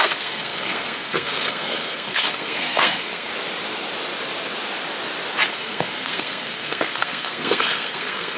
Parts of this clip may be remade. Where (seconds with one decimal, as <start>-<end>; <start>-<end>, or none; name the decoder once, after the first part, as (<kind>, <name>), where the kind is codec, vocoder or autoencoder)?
0.0-3.3 (codec, SNAC); 5.5-8.4